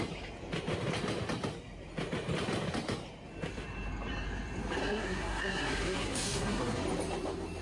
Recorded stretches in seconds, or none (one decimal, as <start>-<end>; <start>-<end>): 0.0-4.8; 6.8-7.6